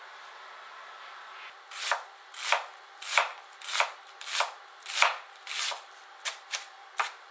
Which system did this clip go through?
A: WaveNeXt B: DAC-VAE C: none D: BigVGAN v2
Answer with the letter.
C